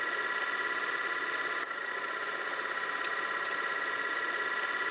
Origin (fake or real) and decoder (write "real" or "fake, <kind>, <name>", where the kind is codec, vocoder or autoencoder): real